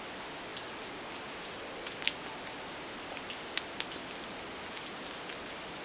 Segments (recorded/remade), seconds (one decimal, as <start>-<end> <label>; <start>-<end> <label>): 0.0-5.8 recorded